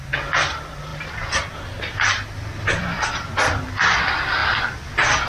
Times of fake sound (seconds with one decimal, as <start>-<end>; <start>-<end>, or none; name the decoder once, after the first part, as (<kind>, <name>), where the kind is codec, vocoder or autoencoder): 0.0-4.4 (vocoder, BigVGAN v2)